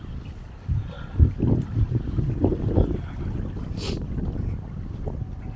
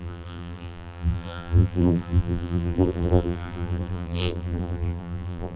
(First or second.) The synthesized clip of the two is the second